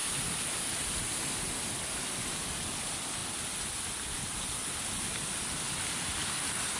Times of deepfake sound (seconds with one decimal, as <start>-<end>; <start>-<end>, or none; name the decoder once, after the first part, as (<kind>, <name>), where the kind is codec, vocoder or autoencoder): 0.0-1.0 (vocoder, BigVGAN v2)